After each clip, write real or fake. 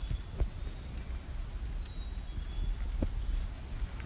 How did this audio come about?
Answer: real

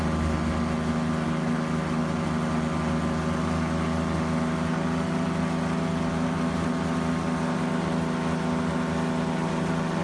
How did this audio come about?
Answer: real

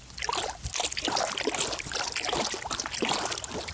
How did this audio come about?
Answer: real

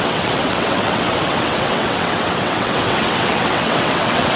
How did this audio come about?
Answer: fake